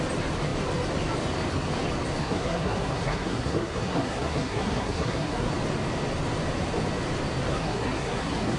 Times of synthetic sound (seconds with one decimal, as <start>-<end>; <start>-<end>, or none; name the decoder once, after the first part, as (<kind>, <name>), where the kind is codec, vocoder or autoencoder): 2.2-5.5 (codec, SNAC); 7.5-8.6